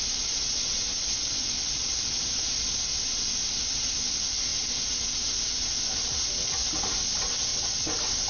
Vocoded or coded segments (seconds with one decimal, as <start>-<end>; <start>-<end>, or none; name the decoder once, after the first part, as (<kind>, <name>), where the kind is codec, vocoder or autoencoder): none